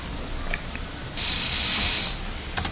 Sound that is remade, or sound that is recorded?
recorded